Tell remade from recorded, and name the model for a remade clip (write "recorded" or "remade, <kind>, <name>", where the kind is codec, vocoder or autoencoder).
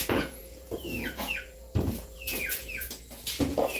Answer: remade, vocoder, Vocos